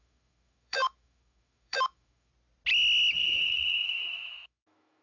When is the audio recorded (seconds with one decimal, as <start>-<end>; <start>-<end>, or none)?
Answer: 2.3-3.4